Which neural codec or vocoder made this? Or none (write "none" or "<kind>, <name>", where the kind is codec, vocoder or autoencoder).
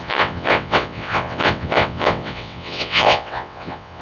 vocoder, WaveNeXt